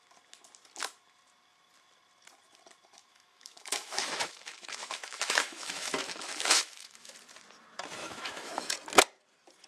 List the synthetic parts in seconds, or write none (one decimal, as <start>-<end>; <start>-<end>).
3.1-7.1; 8.0-8.7